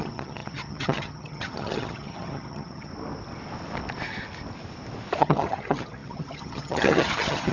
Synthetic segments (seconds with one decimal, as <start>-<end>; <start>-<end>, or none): 0.0-2.9; 5.2-7.5